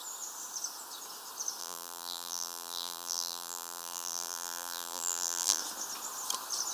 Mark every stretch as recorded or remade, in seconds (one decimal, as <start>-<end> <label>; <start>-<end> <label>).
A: 0.0-1.6 recorded; 1.6-5.6 remade; 5.6-6.7 recorded

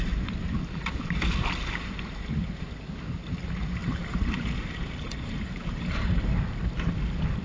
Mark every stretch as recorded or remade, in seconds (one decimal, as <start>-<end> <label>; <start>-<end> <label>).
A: 0.0-3.8 recorded; 3.8-6.2 remade; 6.2-7.4 recorded

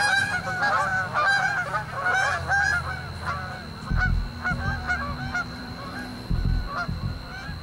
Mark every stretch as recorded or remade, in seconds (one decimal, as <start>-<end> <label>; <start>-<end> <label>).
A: 0.0-0.9 remade; 0.9-5.0 recorded; 5.0-7.6 remade